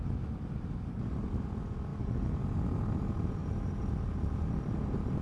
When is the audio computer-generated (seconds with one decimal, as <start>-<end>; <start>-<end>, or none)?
none